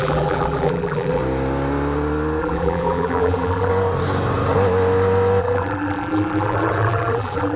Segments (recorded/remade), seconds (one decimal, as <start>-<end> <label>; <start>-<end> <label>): 0.0-1.2 remade; 1.2-2.4 recorded; 2.4-3.7 remade; 3.7-5.4 recorded; 5.4-7.6 remade